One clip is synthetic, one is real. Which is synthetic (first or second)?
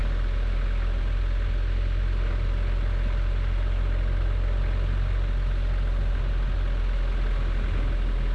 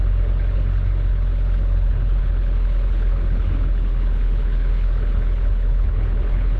second